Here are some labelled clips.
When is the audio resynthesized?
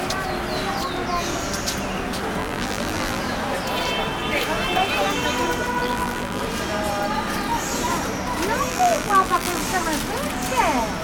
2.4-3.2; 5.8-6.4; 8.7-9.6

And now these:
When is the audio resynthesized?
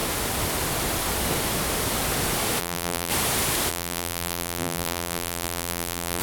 2.6-3.1; 3.7-6.2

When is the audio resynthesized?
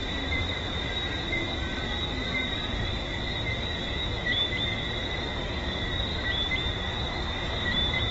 0.0-0.9; 6.1-8.1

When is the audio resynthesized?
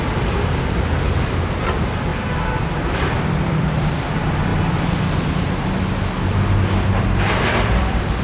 0.0-4.5; 7.0-8.2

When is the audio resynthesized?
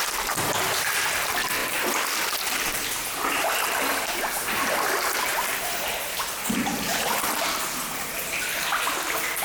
1.6-4.1; 5.3-6.5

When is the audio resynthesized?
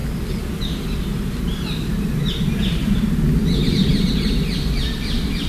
none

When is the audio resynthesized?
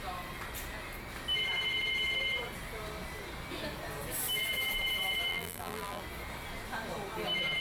5.3-6.0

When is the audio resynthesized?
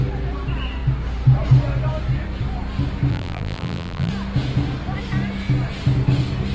3.1-4.1